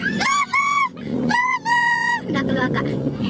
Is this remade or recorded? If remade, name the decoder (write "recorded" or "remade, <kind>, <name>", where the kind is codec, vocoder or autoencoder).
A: remade, vocoder, Vocos